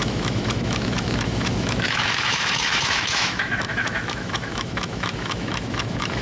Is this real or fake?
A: fake